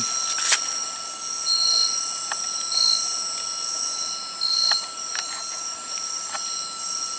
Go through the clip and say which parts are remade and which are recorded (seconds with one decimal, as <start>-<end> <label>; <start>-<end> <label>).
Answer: 0.0-5.1 recorded; 5.1-6.3 remade; 6.3-7.2 recorded

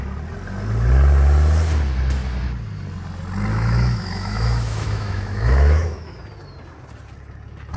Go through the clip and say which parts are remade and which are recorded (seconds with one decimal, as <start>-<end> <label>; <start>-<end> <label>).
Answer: 0.0-3.5 recorded; 3.5-6.2 remade; 6.2-7.8 recorded

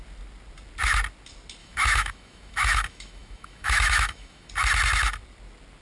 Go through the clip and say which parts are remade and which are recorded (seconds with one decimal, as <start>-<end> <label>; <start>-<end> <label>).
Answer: 0.0-1.6 recorded; 1.6-4.5 remade; 4.5-5.8 recorded

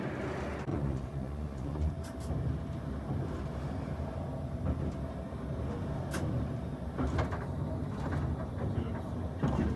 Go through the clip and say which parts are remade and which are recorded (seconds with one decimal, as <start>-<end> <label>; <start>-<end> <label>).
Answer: 0.0-0.7 recorded; 0.7-1.9 remade; 1.9-9.8 recorded